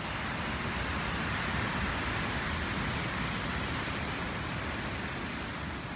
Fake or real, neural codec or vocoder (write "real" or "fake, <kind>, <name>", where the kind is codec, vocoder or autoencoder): real